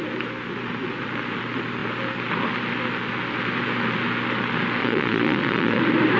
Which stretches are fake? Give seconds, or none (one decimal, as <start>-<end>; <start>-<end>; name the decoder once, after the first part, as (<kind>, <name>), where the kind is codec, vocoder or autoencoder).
4.8-5.8 (vocoder, Vocos)